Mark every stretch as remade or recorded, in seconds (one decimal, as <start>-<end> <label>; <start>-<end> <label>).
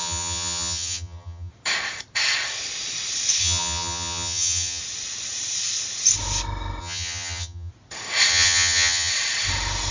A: 0.0-1.5 remade; 1.5-3.4 recorded; 3.4-4.8 remade; 4.8-6.8 recorded; 6.8-7.7 remade; 7.7-8.3 recorded; 8.3-9.1 remade; 9.1-9.9 recorded